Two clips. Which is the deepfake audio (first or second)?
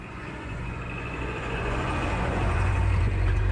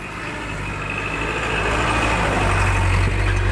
first